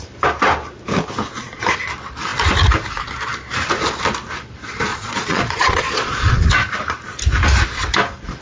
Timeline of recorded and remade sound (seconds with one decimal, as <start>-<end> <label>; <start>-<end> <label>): 0.0-4.9 recorded; 4.9-6.5 remade; 6.5-8.4 recorded